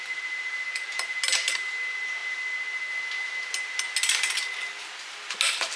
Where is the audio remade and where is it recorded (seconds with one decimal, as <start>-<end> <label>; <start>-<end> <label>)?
0.0-5.8 recorded